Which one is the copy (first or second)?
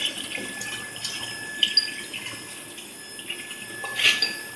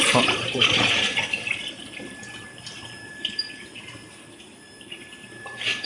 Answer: second